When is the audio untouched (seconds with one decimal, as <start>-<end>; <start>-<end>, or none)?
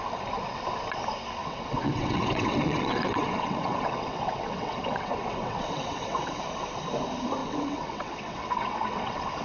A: 0.0-1.4; 6.4-7.4